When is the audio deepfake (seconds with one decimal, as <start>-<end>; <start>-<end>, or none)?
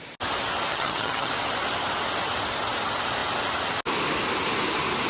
0.7-1.3